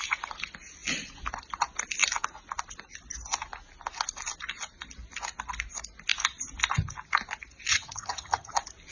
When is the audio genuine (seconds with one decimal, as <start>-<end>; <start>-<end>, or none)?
0.0-7.7; 8.5-8.9